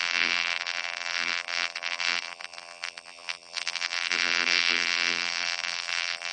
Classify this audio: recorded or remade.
remade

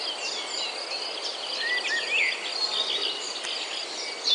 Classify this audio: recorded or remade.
recorded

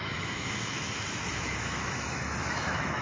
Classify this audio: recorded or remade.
remade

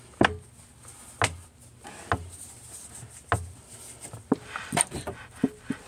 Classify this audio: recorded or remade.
recorded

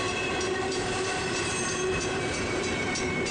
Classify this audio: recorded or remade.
remade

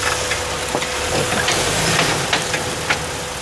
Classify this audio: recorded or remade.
recorded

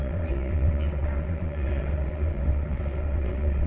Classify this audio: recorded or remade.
remade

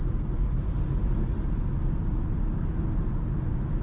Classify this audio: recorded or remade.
recorded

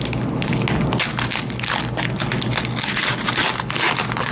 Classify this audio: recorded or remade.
recorded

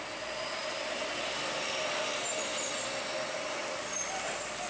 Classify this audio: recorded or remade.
recorded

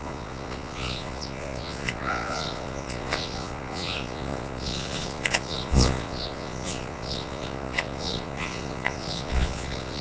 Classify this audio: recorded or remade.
remade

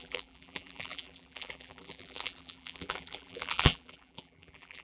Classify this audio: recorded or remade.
remade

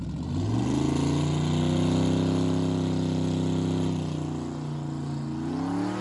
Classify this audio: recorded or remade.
recorded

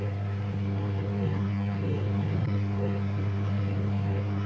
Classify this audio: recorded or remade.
remade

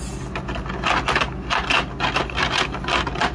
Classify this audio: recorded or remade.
recorded